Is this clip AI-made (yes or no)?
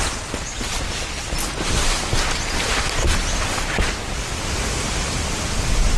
no